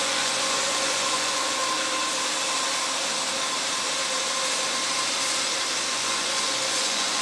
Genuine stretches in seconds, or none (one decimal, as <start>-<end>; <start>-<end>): 1.6-5.9